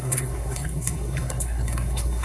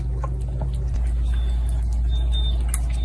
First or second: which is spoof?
first